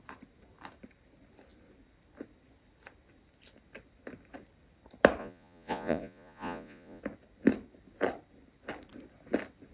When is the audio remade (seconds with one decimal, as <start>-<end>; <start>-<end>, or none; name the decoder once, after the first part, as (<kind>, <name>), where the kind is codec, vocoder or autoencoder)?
5.2-7.0 (vocoder, Vocos)